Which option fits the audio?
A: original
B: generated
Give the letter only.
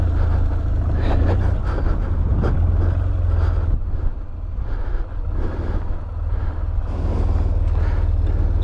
A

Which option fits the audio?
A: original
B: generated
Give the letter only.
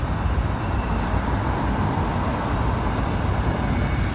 A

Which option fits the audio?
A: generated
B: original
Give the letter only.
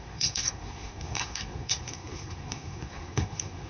A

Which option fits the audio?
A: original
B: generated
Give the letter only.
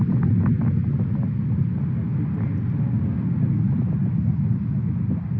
A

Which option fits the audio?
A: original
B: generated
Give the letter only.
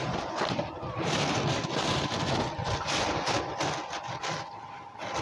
B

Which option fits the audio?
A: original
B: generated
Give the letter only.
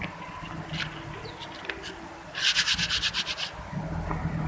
A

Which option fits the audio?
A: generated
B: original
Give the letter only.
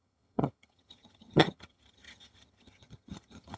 A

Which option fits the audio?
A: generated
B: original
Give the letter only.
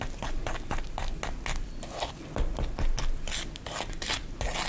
B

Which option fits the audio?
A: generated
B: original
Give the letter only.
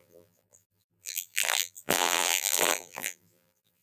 A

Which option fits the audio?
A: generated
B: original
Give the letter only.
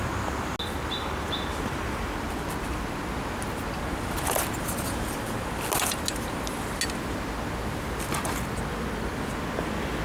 B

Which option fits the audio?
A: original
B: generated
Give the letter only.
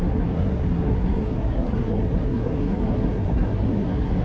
B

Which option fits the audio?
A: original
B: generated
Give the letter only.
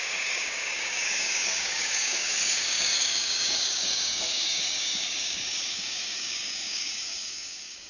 B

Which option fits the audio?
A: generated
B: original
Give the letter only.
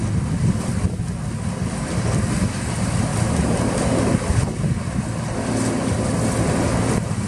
B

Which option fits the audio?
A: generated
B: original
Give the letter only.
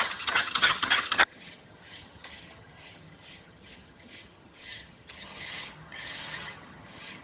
A